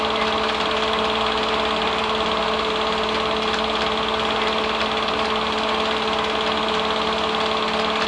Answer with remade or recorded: recorded